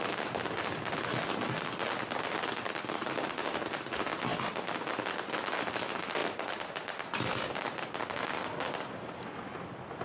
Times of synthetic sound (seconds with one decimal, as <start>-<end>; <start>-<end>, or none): none